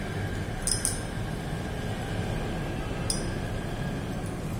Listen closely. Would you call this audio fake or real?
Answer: real